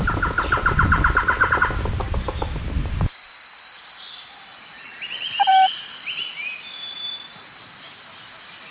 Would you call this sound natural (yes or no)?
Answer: yes